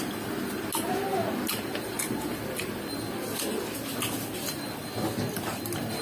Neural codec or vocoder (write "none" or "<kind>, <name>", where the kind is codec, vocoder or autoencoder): none